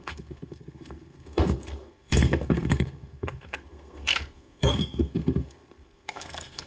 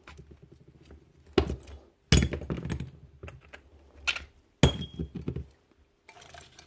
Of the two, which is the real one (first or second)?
second